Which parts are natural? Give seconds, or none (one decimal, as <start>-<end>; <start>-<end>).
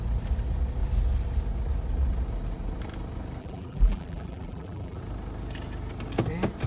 0.0-3.4; 5.0-6.7